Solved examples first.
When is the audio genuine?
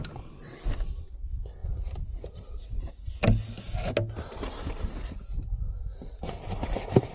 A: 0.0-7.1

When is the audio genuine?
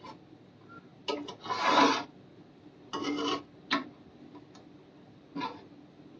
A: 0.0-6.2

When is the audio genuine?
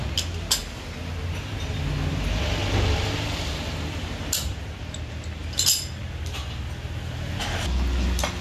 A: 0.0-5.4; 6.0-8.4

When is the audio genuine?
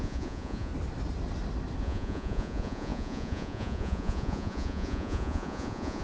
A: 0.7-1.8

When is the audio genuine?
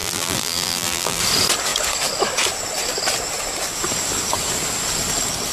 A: 1.2-5.5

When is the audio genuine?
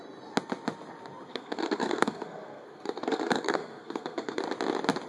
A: 0.0-1.3; 4.4-5.1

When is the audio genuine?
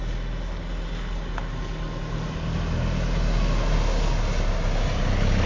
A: 0.0-5.5